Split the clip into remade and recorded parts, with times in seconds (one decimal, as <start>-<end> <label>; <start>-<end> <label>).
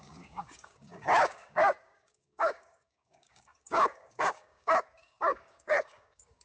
0.0-6.4 remade